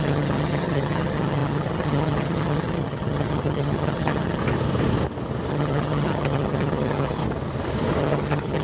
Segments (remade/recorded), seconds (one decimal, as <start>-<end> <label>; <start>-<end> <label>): 0.0-4.4 remade; 4.4-5.5 recorded; 5.5-7.2 remade; 7.2-8.0 recorded; 8.0-8.6 remade